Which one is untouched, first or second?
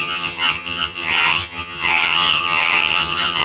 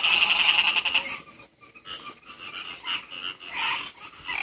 second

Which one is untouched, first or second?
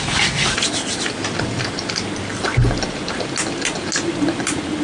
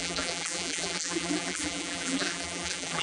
first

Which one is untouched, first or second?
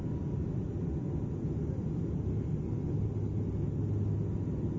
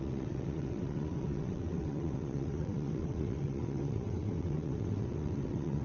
first